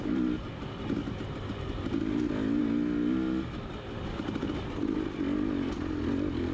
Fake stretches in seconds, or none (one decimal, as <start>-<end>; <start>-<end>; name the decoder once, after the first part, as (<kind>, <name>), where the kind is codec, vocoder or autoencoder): none